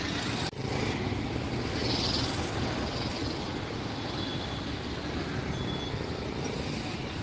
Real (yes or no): yes